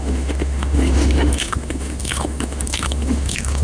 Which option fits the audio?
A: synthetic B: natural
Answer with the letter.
A